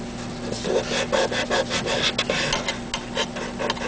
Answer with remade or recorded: recorded